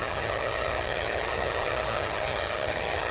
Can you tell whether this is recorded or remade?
remade